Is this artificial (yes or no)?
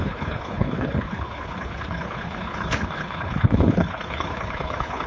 yes